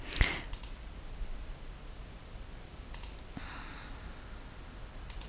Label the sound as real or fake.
real